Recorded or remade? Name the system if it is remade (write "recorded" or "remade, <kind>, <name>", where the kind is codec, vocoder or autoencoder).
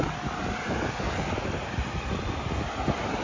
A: recorded